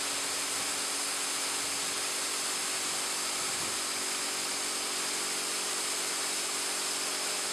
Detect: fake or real real